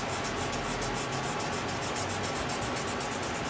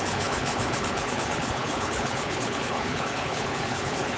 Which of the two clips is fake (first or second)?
second